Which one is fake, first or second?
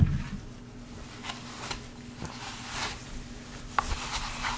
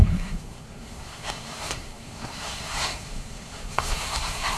second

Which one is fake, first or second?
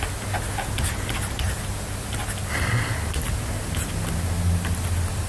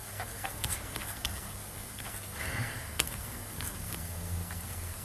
second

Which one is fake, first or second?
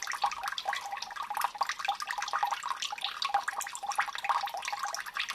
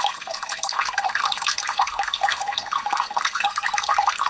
second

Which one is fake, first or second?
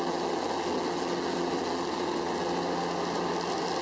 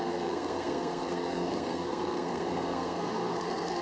second